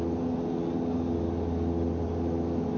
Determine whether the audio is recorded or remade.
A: recorded